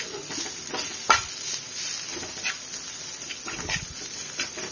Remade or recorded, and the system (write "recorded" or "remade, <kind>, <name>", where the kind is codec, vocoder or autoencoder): recorded